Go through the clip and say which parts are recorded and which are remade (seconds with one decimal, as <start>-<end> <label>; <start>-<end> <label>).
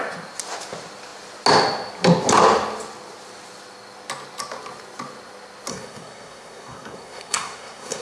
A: 0.0-5.7 recorded; 5.7-8.0 remade